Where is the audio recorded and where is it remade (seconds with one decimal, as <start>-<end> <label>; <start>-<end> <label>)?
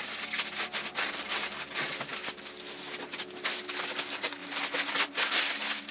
0.0-5.9 recorded